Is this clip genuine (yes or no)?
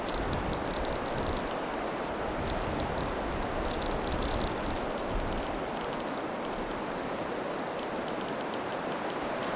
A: yes